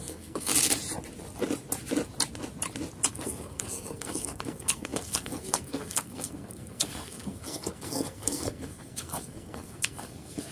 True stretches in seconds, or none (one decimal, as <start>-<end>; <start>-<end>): 0.5-3.1